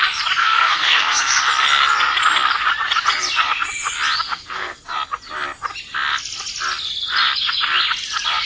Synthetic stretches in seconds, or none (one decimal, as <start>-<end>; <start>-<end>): 0.4-1.4; 4.3-4.9